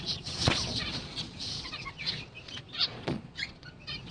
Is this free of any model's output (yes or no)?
no